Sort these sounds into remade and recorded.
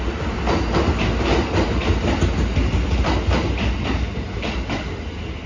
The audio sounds recorded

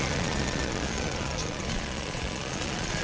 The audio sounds remade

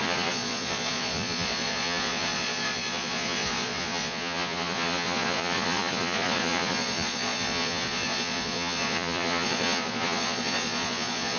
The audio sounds remade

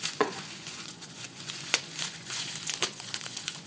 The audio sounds remade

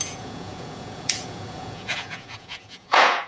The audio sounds remade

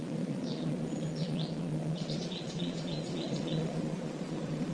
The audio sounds remade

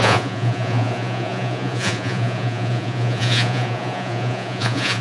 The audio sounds remade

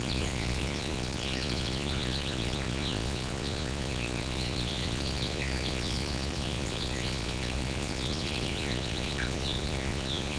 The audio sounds remade